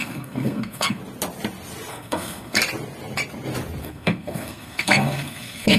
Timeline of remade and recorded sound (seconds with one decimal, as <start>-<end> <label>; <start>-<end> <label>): 0.0-1.0 remade; 1.0-1.9 recorded; 1.9-2.6 remade; 2.6-3.8 recorded; 3.8-5.8 remade